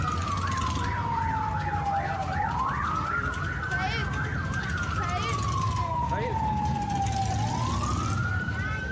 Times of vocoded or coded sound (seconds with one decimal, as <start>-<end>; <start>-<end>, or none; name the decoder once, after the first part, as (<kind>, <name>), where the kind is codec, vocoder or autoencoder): none